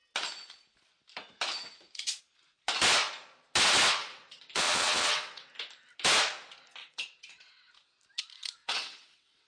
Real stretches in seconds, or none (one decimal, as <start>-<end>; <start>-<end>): 0.0-4.0; 5.5-6.8; 7.7-8.6